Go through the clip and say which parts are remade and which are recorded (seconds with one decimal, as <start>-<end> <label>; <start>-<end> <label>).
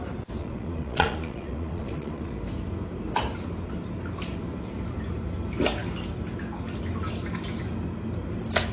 0.0-0.4 recorded; 0.4-2.4 remade; 2.4-8.7 recorded